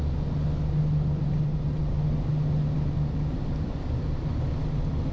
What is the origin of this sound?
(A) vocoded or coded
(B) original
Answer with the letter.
B